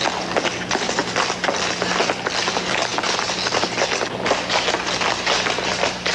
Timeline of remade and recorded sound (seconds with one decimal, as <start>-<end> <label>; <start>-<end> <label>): 0.0-6.1 recorded